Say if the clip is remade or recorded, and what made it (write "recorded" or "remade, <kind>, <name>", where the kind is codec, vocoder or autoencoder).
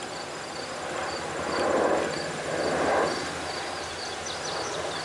recorded